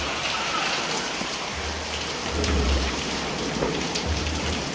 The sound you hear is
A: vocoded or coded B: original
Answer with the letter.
A